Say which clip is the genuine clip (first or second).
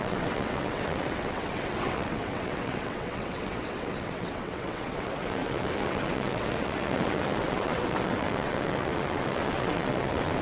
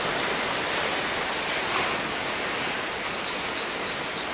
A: second